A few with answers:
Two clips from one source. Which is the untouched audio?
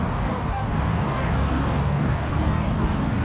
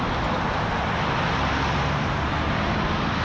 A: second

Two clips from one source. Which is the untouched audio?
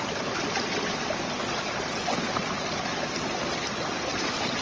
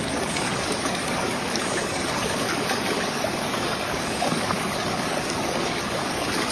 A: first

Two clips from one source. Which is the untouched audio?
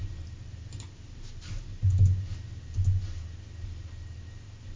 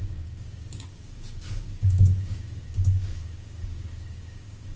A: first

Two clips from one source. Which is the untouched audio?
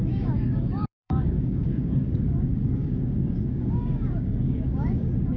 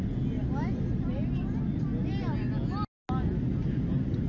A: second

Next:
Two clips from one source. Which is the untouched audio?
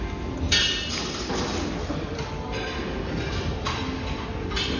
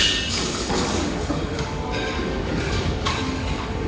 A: first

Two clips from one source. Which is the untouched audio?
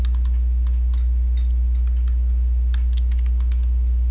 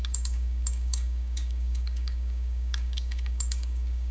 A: first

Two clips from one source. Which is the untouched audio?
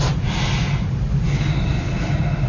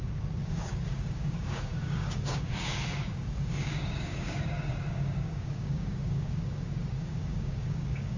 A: first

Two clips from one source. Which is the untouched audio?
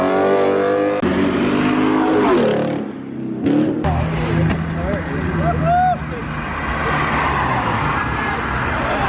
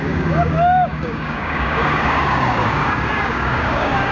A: first